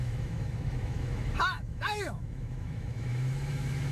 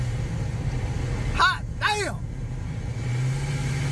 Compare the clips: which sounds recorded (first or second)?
second